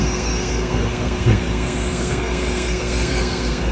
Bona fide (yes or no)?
no